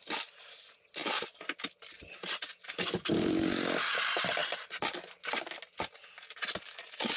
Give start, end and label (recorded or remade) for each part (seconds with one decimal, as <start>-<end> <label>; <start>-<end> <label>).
0.0-7.2 recorded